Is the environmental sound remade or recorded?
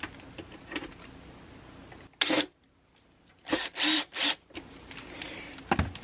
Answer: recorded